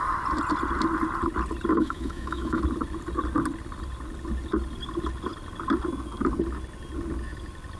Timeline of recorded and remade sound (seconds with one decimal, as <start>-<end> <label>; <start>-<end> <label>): 0.0-1.7 recorded; 1.7-2.6 remade; 2.6-7.8 recorded